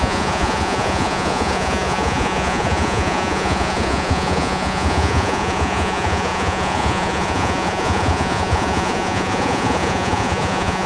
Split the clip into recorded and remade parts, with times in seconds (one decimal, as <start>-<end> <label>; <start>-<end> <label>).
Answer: 0.0-10.9 remade